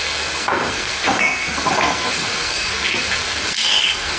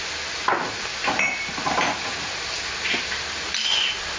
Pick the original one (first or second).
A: second